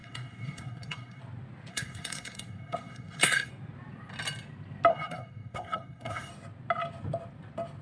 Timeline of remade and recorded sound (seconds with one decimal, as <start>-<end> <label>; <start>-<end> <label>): 0.0-1.2 remade; 1.2-1.7 recorded; 1.7-3.5 remade; 3.5-4.9 recorded; 4.9-6.3 remade; 6.3-7.8 recorded